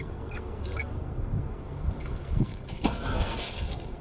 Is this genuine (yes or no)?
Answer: no